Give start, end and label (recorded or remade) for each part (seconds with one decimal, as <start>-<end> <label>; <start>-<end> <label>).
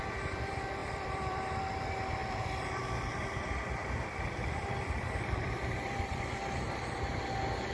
0.0-0.8 recorded; 0.8-1.6 remade; 1.6-2.2 recorded; 2.2-2.8 remade; 2.8-3.8 recorded; 3.8-7.2 remade; 7.2-7.7 recorded